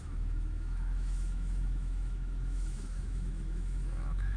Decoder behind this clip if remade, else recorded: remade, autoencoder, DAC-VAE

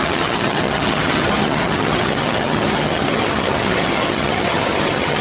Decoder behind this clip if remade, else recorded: remade, vocoder, HiFi-GAN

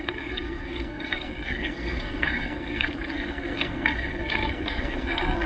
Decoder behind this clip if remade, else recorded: remade, codec, SNAC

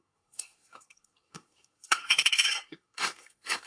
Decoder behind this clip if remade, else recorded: remade, codec, SNAC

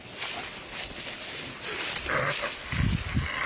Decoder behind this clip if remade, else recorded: recorded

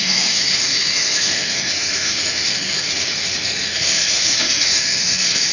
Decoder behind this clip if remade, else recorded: remade, autoencoder, DAC-VAE